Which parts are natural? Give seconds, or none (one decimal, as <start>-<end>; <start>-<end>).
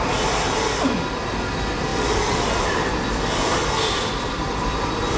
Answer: 0.0-5.2